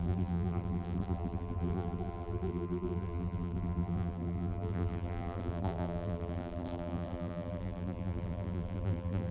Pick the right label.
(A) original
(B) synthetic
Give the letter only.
B